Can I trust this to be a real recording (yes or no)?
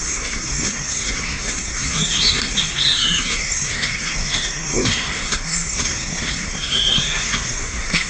no